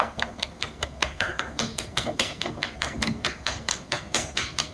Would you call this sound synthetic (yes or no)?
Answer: yes